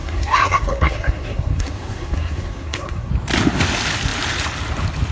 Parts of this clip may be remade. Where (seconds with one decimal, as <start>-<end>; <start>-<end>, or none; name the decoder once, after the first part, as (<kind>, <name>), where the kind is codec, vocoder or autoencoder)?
0.0-3.1 (codec, SNAC)